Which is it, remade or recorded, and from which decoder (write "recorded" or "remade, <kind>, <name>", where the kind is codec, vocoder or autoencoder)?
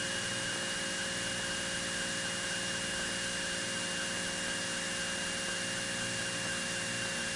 recorded